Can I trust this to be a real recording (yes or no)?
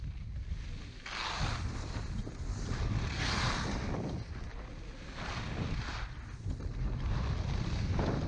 yes